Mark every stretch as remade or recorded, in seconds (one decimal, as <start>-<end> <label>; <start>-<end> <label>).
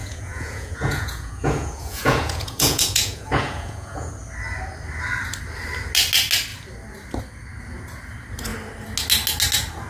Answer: 0.0-4.1 remade; 4.1-9.9 recorded